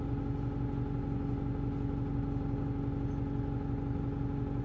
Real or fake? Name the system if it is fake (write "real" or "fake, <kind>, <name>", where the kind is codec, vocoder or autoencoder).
real